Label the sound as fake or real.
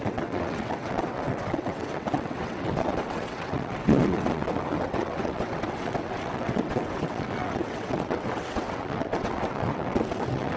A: fake